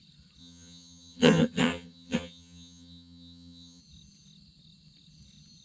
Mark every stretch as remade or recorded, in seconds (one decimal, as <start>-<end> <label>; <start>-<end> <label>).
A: 0.0-0.4 recorded; 0.4-3.8 remade; 3.8-5.6 recorded